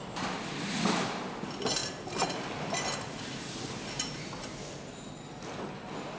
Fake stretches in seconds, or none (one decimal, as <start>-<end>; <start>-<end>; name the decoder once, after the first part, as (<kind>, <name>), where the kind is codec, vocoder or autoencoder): 1.8-3.7 (vocoder, BigVGAN v2)